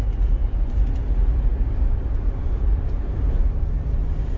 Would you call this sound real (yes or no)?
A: no